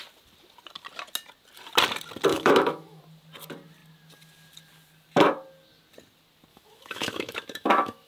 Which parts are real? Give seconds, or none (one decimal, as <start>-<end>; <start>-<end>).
0.0-2.3; 3.0-6.5